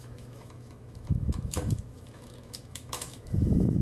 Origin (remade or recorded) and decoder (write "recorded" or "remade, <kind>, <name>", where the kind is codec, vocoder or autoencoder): remade, autoencoder, DAC-VAE